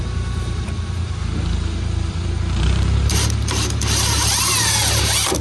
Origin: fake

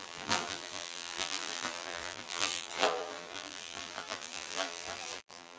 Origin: fake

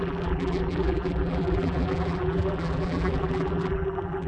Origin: fake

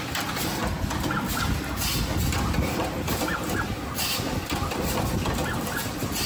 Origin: real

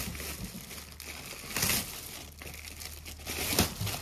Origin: real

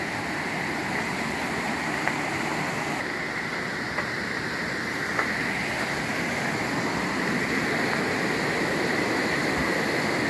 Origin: real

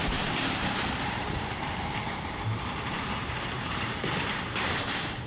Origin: fake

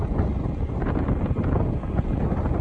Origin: real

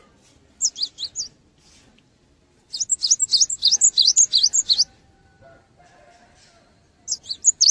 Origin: real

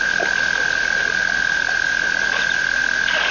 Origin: fake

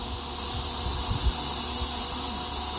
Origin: real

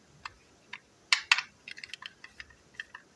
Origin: real